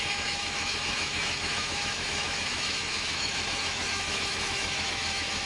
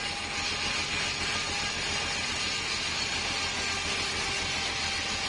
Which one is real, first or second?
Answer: second